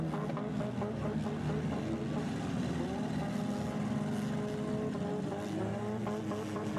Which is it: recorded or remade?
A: recorded